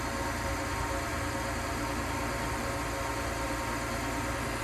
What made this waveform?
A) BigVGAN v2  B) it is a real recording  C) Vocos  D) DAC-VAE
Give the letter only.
B